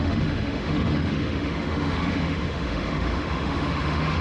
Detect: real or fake fake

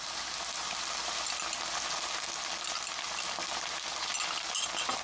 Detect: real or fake real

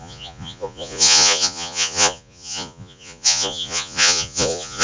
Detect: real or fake fake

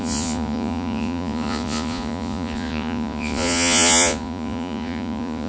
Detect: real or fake fake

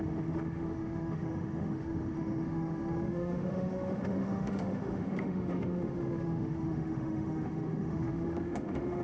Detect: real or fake fake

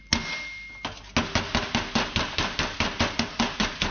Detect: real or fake real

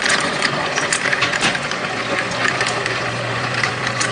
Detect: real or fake fake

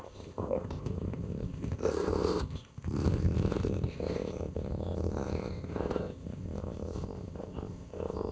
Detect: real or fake fake